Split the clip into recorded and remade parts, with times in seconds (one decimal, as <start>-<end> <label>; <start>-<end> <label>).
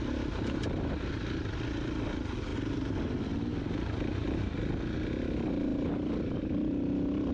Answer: 0.0-7.3 recorded